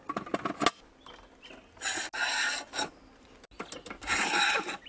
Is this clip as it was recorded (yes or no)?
yes